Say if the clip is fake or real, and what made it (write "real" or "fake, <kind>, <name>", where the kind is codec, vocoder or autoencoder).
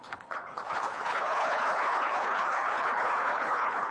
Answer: fake, codec, HILCodec